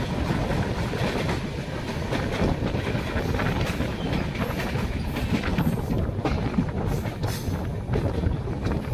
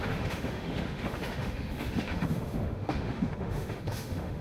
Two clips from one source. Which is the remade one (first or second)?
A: second